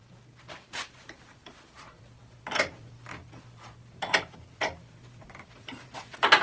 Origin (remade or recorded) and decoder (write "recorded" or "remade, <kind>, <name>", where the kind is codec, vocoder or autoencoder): remade, vocoder, BigVGAN v2